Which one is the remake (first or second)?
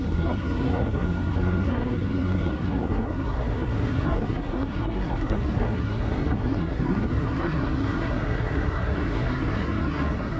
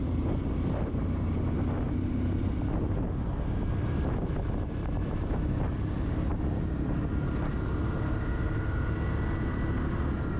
first